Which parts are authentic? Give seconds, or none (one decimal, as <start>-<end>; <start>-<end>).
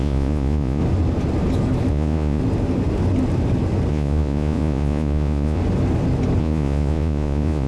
0.8-1.9; 2.4-3.9; 5.6-6.4